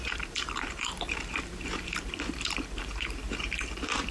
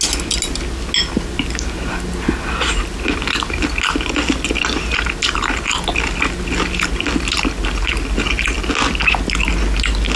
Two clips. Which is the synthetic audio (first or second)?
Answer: first